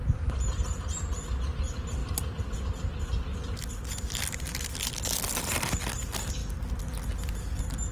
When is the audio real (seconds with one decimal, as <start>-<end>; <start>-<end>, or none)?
0.0-7.9